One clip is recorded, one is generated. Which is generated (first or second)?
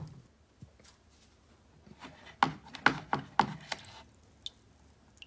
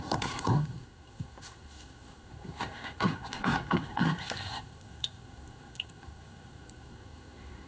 second